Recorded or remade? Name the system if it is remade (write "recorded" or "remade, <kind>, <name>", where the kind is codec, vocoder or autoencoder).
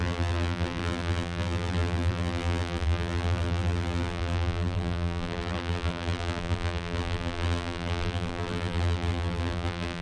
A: remade, vocoder, BigVGAN v2